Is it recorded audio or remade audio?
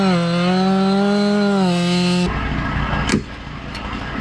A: recorded